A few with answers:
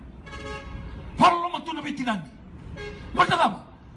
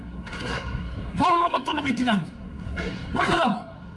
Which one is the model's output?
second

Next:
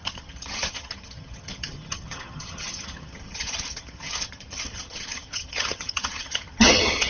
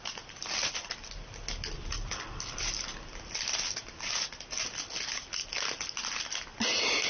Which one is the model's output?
first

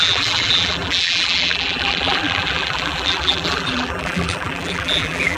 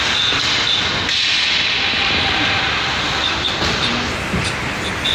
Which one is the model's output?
first